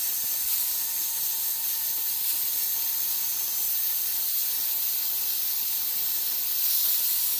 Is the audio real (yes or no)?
yes